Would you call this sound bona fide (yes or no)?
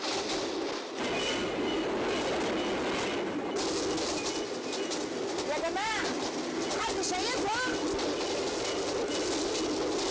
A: yes